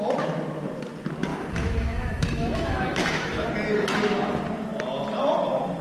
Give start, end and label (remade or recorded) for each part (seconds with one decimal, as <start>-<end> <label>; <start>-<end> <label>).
0.0-1.3 recorded; 1.3-3.5 remade; 3.5-5.8 recorded